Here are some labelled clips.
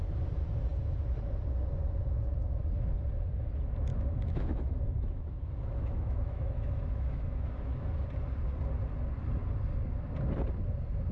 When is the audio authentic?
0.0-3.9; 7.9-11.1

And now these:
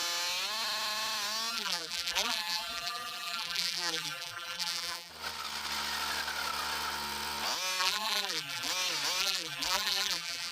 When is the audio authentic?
0.0-1.5; 5.1-7.8; 8.7-9.2

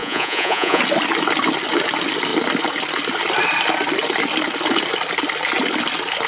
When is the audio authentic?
0.8-6.3

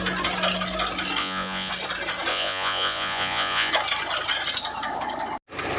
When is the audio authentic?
0.0-1.2; 1.7-2.3; 3.7-5.8